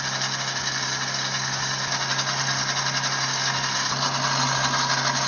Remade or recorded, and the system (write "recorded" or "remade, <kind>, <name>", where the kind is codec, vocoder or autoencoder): recorded